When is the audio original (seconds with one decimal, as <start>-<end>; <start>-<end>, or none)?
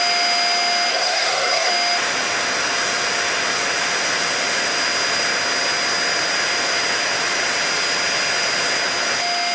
0.0-0.9; 1.7-9.5